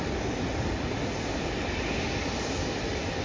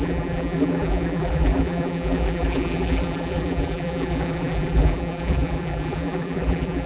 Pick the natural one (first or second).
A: first